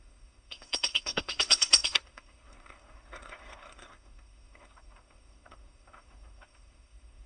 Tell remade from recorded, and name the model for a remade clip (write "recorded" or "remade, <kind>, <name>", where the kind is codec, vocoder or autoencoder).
remade, codec, SNAC